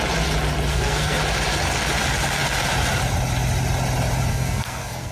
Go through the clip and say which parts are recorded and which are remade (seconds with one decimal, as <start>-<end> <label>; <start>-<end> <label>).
0.0-0.7 recorded; 0.7-1.2 remade; 1.2-4.3 recorded; 4.3-5.1 remade